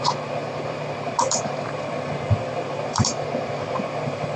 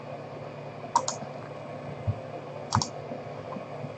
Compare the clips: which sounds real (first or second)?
second